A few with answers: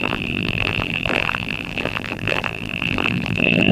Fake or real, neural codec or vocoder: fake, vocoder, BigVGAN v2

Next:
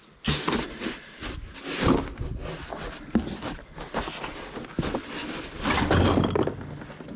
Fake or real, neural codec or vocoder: real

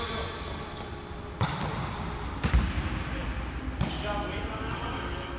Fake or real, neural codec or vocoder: real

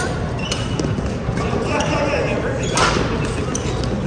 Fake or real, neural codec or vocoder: real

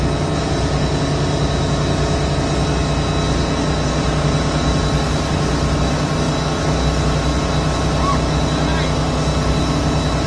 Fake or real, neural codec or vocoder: real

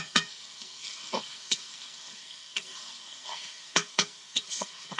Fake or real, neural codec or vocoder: fake, codec, SNAC